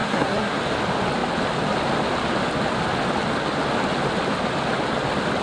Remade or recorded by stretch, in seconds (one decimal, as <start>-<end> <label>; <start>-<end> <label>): 0.0-0.6 remade; 0.6-5.4 recorded